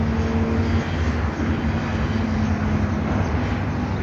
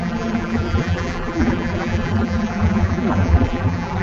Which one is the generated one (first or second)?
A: second